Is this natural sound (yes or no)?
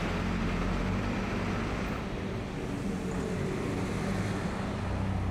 yes